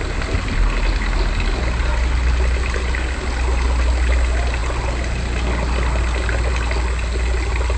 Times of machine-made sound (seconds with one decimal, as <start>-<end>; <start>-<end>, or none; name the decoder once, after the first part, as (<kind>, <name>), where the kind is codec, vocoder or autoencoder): none